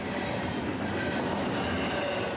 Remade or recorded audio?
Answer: recorded